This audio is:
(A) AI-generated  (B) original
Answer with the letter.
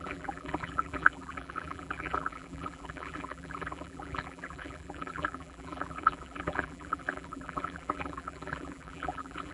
A